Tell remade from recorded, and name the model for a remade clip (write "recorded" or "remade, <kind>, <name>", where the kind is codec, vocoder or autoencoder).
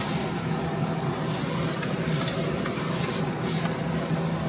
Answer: recorded